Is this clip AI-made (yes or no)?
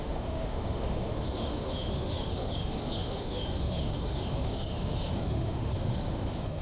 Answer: yes